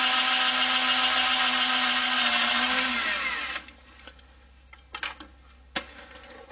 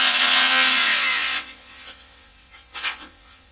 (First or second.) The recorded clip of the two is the first